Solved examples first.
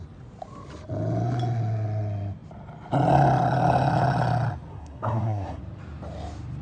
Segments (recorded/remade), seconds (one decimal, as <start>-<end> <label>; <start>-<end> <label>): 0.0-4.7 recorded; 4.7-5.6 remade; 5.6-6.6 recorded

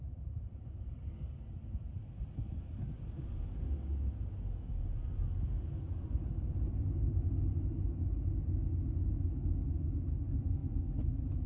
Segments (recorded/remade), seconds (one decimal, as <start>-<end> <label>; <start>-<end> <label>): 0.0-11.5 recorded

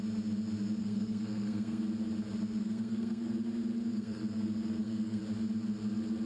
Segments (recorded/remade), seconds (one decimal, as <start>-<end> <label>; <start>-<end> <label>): 0.0-0.8 recorded; 0.8-1.8 remade; 1.8-2.6 recorded; 2.6-3.3 remade; 3.3-3.9 recorded; 3.9-5.2 remade; 5.2-6.3 recorded

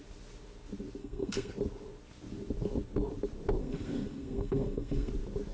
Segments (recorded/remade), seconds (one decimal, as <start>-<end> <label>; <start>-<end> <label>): 0.0-1.0 recorded; 1.0-1.5 remade; 1.5-3.6 recorded; 3.6-5.1 remade; 5.1-5.5 recorded